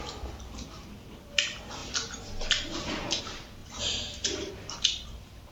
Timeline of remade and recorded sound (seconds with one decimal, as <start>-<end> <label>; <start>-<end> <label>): 0.0-3.6 recorded; 3.6-4.5 remade; 4.5-5.5 recorded